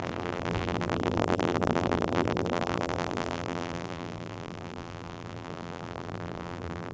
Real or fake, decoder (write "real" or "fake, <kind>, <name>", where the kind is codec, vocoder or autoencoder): fake, vocoder, BigVGAN v2